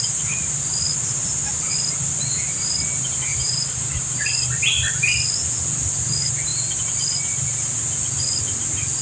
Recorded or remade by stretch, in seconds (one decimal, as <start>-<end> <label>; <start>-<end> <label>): 0.0-3.3 recorded; 3.3-3.9 remade; 3.9-9.0 recorded